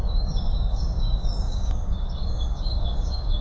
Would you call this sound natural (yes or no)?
no